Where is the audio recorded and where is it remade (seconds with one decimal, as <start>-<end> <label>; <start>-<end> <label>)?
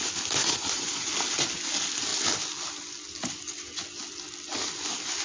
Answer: 0.0-0.4 recorded; 0.4-1.1 remade; 1.1-5.2 recorded